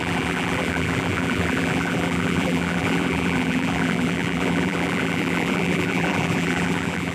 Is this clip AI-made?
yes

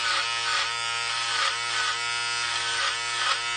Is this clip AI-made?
no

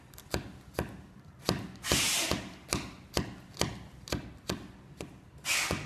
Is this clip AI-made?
no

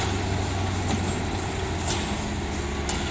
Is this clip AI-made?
no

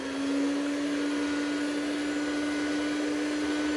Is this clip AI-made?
no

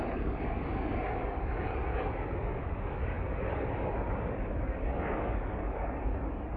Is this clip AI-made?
yes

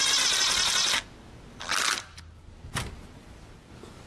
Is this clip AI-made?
no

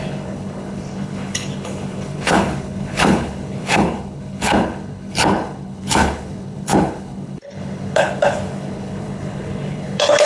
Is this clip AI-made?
yes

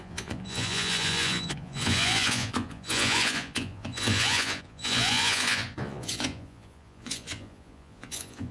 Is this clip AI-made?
yes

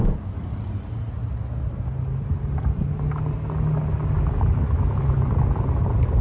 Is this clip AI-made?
no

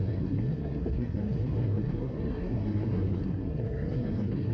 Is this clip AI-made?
yes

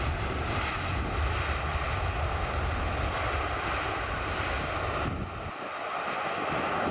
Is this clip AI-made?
no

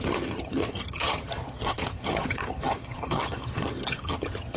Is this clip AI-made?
yes